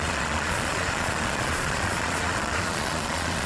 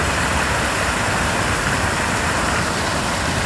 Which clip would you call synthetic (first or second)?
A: first